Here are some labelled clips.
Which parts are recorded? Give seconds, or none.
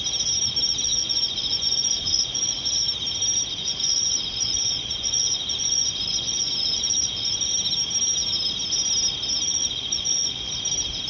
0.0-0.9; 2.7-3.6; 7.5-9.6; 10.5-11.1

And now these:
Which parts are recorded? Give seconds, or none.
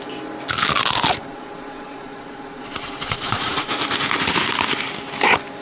0.0-1.2; 3.7-5.6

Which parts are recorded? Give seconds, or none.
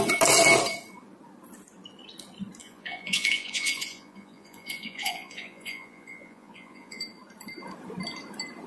0.0-2.6; 7.0-8.7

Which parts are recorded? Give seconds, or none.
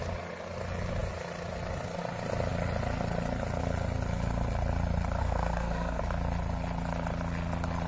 0.0-5.2; 6.0-7.9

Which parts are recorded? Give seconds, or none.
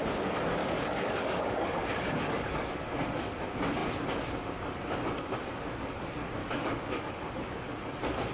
0.0-0.6; 2.7-6.4; 7.3-8.3